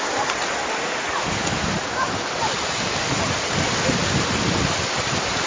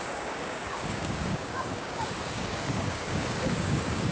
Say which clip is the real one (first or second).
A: first